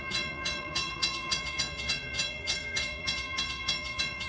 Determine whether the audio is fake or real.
fake